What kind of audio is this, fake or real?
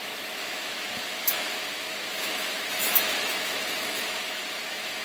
fake